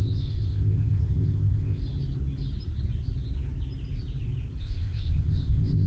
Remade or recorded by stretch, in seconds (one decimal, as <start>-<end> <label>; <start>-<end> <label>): 0.0-1.8 remade; 1.8-4.6 recorded; 4.6-5.9 remade

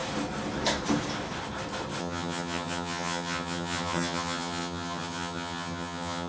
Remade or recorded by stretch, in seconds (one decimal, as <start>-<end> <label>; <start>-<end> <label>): 0.0-2.0 recorded; 2.0-6.3 remade

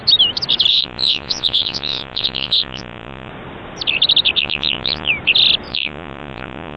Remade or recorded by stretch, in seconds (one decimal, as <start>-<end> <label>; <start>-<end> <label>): 0.0-0.7 recorded; 0.7-3.3 remade; 3.3-4.4 recorded; 4.4-5.1 remade; 5.1-5.7 recorded; 5.7-6.8 remade

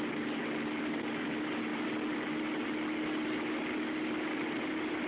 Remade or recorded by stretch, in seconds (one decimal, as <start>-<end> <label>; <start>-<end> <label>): 0.0-5.1 recorded

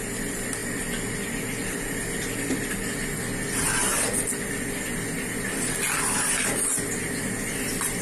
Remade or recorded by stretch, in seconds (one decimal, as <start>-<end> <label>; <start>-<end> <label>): 0.0-8.0 recorded